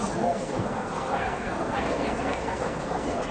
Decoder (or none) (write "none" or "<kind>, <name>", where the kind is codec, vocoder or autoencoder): codec, SNAC